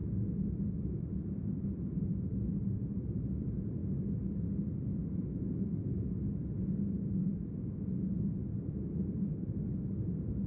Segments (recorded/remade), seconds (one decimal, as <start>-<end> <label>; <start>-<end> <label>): 0.0-10.5 recorded